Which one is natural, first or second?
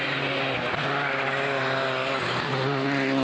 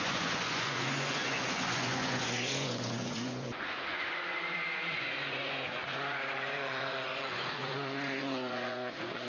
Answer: first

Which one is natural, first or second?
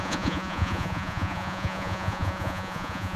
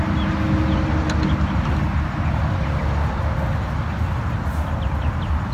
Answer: second